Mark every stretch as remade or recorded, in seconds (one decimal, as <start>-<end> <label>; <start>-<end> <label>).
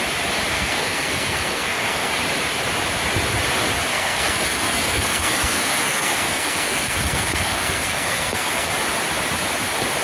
0.0-0.5 recorded; 0.5-2.1 remade; 2.1-3.9 recorded; 3.9-8.7 remade; 8.7-10.0 recorded